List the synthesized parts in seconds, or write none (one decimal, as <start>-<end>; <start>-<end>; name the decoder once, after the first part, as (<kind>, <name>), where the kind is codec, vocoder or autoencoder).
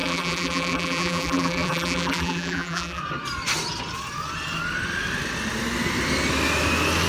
0.0-3.0 (vocoder, BigVGAN v2)